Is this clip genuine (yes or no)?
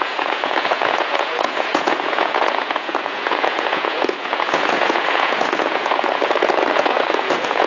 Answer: no